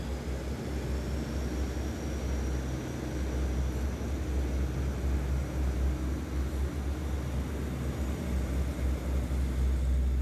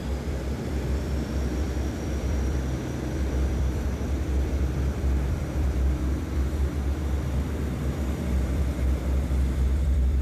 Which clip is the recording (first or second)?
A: first